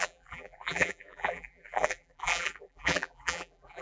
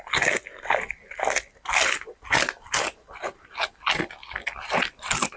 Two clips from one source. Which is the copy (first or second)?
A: first